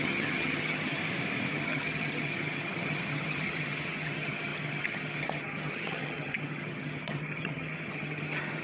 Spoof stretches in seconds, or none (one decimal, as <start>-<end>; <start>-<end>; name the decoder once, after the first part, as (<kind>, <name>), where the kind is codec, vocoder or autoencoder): 0.0-1.0 (vocoder, HiFi-GAN); 1.5-8.6